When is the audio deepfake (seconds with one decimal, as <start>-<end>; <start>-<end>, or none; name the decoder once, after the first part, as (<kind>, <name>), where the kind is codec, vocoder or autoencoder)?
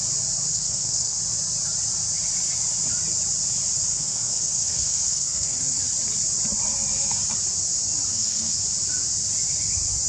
0.5-1.2 (codec, SNAC); 3.9-5.8; 8.1-8.6